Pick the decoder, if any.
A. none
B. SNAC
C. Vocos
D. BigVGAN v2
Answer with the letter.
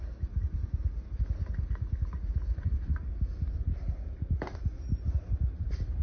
A